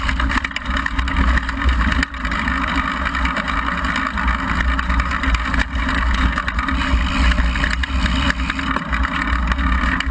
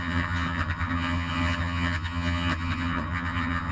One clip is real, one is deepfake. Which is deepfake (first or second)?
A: second